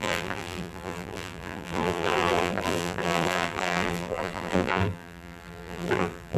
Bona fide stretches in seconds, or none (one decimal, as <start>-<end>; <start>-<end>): none